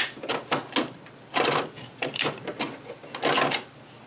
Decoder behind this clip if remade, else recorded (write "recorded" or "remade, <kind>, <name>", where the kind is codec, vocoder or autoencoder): recorded